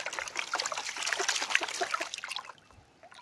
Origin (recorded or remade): recorded